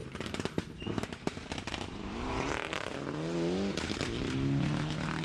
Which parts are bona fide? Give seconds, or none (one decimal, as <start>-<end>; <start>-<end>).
2.9-5.2